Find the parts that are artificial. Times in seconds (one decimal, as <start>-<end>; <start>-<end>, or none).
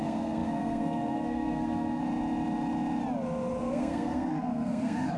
0.0-2.0; 3.6-5.2